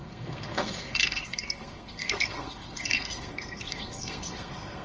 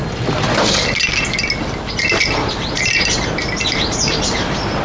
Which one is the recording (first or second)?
second